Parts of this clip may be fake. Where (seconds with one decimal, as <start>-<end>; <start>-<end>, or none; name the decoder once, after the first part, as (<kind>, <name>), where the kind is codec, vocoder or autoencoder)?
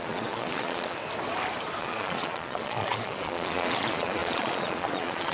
0.0-1.0 (vocoder, Vocos); 1.8-5.3